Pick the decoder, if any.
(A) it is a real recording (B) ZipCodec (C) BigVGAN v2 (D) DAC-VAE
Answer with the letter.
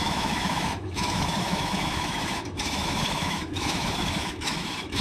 D